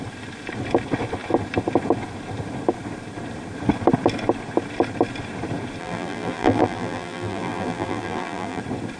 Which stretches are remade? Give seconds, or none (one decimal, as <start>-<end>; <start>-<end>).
5.8-8.6

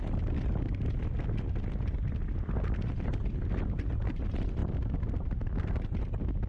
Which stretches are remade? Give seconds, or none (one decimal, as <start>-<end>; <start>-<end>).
none